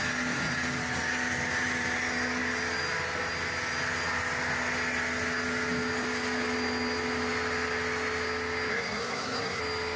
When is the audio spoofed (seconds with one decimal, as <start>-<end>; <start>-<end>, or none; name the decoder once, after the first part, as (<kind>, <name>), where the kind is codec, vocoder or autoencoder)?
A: 8.7-9.6 (codec, SNAC)